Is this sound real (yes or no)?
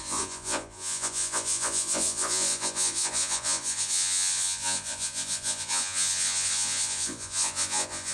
no